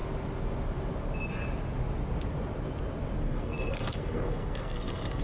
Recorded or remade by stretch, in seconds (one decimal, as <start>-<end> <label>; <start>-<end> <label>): 0.0-3.2 recorded; 3.2-5.2 remade